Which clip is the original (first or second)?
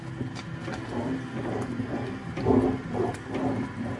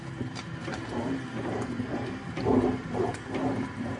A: first